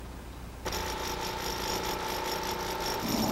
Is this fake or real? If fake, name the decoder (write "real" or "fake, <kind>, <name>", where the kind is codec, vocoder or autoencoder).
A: real